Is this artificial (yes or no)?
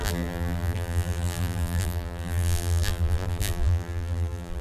yes